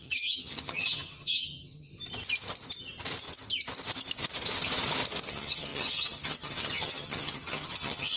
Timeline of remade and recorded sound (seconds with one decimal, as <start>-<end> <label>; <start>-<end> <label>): 0.0-1.9 remade; 1.9-5.3 recorded; 5.3-8.2 remade